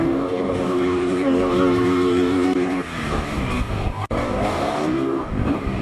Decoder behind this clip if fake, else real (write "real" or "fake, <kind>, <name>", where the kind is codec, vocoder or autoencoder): fake, codec, DAC